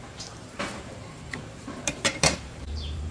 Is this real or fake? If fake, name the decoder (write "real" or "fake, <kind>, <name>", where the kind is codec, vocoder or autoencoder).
fake, vocoder, BigVGAN v2